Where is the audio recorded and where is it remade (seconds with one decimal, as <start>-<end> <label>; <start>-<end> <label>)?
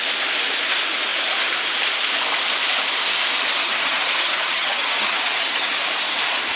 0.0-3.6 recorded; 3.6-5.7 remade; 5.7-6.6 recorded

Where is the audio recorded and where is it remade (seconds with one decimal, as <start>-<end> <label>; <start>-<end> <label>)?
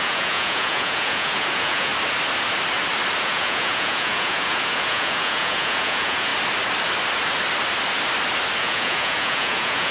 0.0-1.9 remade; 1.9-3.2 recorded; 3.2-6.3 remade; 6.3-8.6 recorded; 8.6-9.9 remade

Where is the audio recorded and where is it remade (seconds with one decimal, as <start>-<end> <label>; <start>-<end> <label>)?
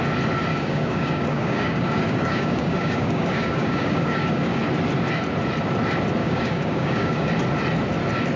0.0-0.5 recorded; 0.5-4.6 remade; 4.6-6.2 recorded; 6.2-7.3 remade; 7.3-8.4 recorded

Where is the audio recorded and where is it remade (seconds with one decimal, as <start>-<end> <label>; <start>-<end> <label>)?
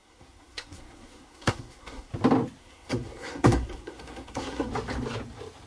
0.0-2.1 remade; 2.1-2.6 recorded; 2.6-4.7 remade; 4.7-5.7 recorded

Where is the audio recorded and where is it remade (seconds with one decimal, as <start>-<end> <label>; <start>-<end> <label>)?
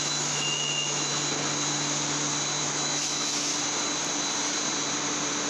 0.0-1.1 remade; 1.1-2.6 recorded; 2.6-3.5 remade; 3.5-5.5 recorded